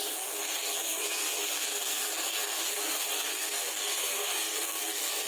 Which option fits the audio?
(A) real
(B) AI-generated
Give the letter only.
B